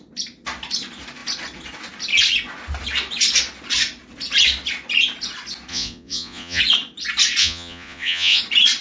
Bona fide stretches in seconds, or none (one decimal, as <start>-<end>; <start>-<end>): 0.0-5.7; 6.6-7.4; 8.4-8.8